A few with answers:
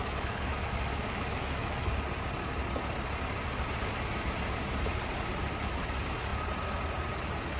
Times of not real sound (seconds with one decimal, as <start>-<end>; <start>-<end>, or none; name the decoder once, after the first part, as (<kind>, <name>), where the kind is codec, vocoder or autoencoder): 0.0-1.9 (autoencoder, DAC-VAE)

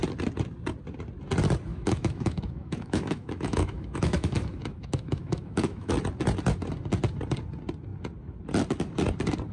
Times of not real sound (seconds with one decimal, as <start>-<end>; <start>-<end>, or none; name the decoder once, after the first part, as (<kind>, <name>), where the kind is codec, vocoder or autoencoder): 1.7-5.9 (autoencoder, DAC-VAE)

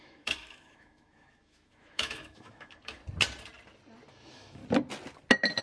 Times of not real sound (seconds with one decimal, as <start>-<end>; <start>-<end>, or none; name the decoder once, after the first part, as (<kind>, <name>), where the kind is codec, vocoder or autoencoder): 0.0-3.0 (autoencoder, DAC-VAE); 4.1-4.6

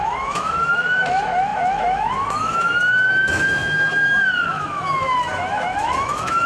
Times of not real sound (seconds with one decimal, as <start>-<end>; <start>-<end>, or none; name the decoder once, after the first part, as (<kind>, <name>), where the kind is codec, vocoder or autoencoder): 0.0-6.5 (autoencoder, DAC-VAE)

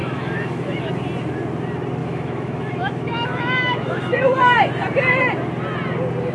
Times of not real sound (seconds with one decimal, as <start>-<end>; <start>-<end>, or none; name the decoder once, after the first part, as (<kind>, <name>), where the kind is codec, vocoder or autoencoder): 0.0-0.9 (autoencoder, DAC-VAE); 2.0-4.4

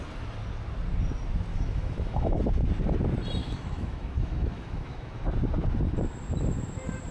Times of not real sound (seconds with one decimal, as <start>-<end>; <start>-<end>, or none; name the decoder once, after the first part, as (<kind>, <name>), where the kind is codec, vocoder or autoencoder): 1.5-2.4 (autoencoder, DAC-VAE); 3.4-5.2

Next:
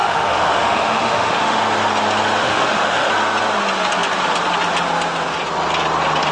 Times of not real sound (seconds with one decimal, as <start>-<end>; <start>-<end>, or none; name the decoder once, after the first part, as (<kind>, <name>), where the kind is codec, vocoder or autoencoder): 0.0-1.6 (autoencoder, DAC-VAE); 2.4-3.1